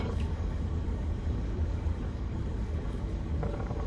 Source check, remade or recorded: remade